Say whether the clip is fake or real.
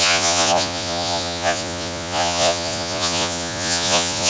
fake